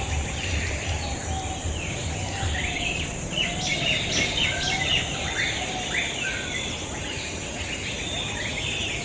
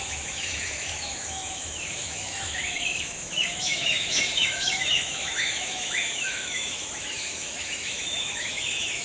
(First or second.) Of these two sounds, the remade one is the second